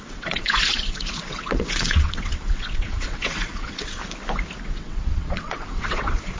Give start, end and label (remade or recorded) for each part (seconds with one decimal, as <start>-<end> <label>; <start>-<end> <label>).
0.0-4.0 remade; 4.0-4.6 recorded; 4.6-6.4 remade